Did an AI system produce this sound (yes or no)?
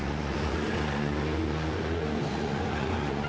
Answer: yes